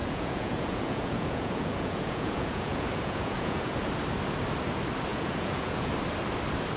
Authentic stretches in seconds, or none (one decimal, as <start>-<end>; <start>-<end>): 3.9-5.1; 5.9-6.8